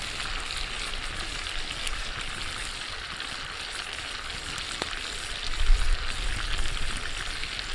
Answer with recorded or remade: recorded